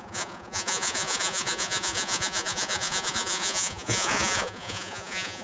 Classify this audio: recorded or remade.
remade